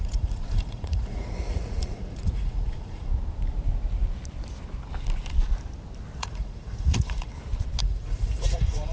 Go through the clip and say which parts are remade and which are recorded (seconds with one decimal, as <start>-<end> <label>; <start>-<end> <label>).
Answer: 0.0-3.1 remade; 3.1-6.2 recorded; 6.2-7.3 remade; 7.3-7.8 recorded; 7.8-8.9 remade